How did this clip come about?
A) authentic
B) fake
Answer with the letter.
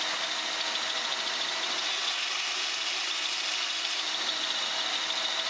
A